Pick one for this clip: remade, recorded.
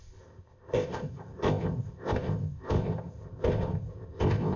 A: remade